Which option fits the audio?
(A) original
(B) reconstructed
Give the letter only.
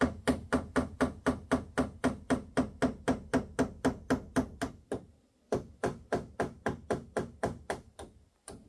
A